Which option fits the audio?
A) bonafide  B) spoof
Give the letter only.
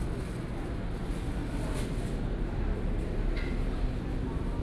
A